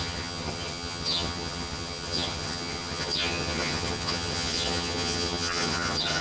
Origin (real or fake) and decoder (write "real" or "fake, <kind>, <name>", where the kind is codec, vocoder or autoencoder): fake, vocoder, HiFi-GAN